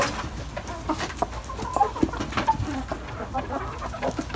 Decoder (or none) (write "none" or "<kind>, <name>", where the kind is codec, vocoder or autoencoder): none